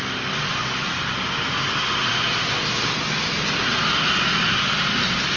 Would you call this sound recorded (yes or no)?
yes